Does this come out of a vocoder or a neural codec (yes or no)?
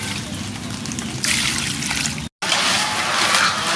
no